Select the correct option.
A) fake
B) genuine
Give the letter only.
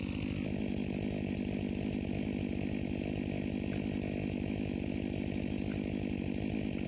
B